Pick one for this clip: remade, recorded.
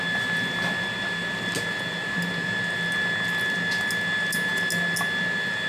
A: recorded